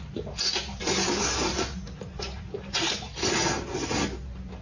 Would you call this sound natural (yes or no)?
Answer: yes